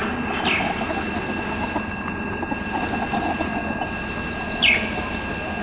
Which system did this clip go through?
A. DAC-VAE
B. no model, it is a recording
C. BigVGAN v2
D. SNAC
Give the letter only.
B